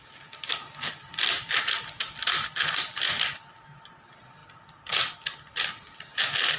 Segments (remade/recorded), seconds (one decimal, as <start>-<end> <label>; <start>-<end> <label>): 0.0-6.6 recorded